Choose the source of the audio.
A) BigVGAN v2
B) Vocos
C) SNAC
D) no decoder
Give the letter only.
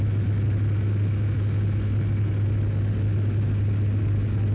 D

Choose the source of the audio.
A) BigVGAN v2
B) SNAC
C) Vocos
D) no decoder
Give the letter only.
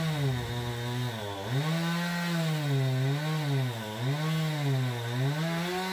D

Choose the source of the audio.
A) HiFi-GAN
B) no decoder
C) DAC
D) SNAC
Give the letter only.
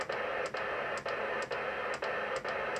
B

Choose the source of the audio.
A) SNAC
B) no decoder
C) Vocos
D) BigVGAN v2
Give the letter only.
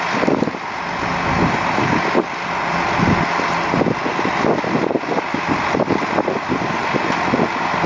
B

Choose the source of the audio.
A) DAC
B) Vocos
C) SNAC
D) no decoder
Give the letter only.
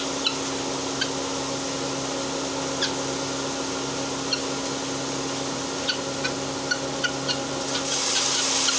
D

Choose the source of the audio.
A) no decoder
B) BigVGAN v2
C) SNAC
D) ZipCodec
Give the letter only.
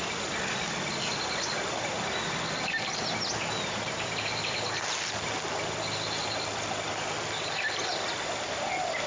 A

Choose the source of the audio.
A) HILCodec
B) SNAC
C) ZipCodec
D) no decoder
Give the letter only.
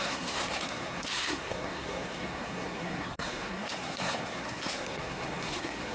B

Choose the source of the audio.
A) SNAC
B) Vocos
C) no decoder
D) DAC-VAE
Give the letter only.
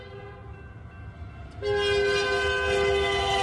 C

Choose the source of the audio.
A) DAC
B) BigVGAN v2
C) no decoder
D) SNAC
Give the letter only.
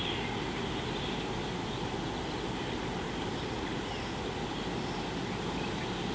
C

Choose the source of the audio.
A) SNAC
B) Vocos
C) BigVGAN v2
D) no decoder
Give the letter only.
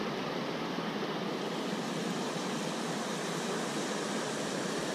D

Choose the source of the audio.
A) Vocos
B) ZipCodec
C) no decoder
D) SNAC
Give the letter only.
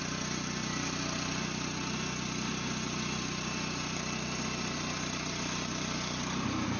C